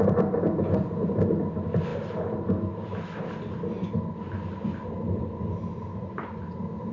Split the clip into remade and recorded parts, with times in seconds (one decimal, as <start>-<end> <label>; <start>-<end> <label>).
0.0-6.9 recorded